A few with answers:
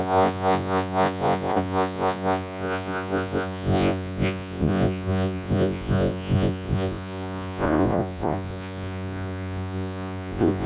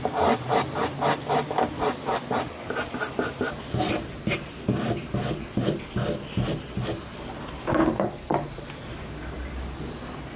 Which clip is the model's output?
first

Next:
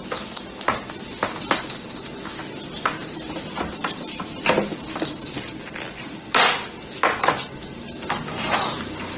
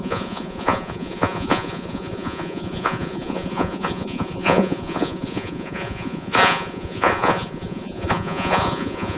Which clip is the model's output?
second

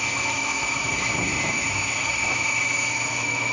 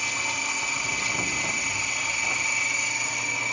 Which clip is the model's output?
first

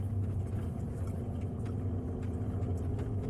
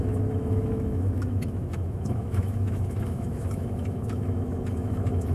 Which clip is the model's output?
second